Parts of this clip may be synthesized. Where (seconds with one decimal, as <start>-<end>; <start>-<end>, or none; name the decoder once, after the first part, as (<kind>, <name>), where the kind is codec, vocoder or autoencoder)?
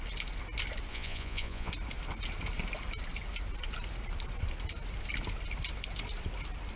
0.9-1.7 (vocoder, Vocos)